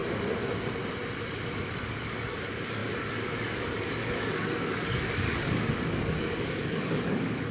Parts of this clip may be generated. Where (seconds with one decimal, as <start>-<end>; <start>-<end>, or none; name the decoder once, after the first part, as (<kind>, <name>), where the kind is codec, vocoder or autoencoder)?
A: 1.6-7.5 (codec, DAC)